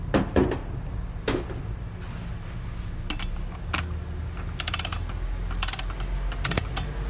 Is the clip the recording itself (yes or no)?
yes